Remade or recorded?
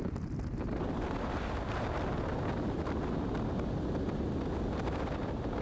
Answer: recorded